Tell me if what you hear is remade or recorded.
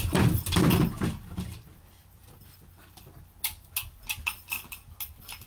recorded